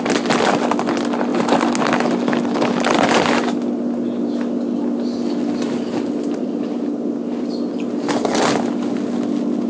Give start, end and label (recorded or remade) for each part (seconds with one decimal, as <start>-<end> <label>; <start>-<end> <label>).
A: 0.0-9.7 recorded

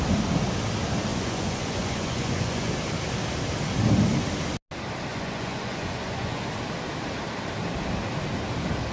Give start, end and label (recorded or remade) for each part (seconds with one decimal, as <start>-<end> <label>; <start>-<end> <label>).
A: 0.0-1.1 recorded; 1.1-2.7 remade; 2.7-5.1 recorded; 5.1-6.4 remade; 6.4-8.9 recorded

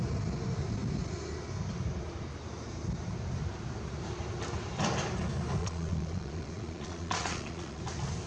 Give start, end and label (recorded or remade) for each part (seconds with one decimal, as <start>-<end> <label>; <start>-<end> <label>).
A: 0.0-5.6 recorded; 5.6-7.8 remade; 7.8-8.3 recorded

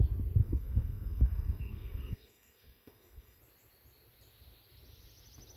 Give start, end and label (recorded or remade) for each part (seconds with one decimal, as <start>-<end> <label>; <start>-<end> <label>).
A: 0.0-0.4 recorded; 0.4-3.4 remade; 3.4-5.6 recorded

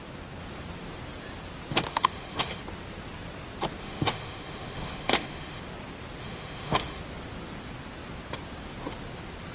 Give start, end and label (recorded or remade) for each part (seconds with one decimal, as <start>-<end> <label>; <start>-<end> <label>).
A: 0.0-1.9 recorded; 1.9-2.6 remade; 2.6-3.8 recorded; 3.8-5.6 remade; 5.6-6.2 recorded; 6.2-7.0 remade; 7.0-9.5 recorded

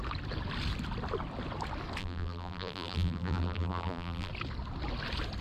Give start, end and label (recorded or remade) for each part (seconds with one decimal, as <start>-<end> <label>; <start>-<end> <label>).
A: 0.0-2.0 recorded; 2.0-4.3 remade; 4.3-5.4 recorded